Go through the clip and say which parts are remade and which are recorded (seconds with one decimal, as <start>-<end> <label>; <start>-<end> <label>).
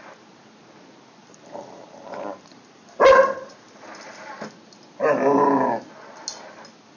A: 0.0-1.2 recorded; 1.2-3.5 remade; 3.5-7.0 recorded